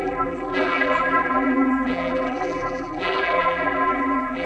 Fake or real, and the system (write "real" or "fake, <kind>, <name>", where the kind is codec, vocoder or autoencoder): fake, vocoder, BigVGAN v2